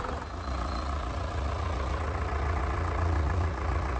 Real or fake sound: fake